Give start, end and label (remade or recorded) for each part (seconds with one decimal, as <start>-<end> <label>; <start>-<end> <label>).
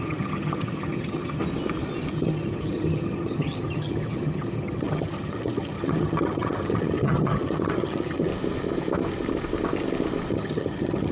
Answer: 0.0-1.4 remade; 1.4-2.1 recorded; 2.1-8.3 remade; 8.3-10.3 recorded; 10.3-11.1 remade